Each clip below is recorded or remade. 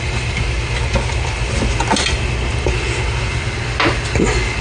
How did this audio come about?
recorded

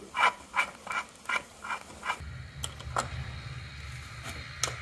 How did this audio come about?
recorded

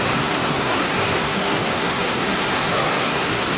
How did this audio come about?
remade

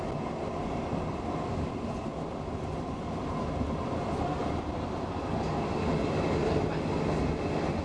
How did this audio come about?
recorded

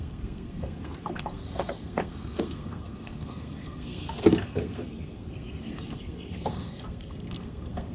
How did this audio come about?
remade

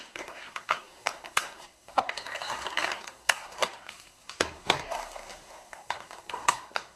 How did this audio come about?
remade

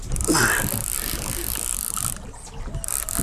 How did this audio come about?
recorded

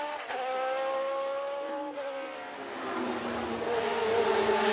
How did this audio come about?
recorded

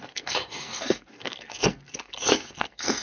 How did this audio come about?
remade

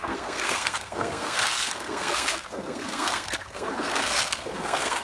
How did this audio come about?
remade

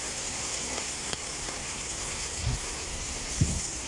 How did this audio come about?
remade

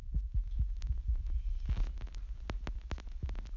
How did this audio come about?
recorded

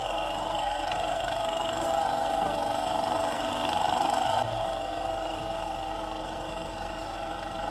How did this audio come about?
remade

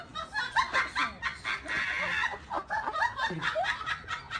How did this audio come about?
recorded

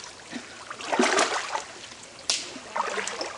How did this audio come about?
recorded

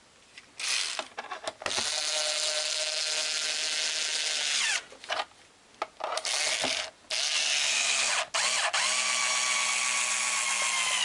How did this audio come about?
recorded